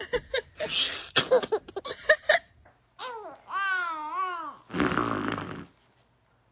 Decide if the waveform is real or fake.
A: real